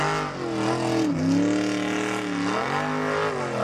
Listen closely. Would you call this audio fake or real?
real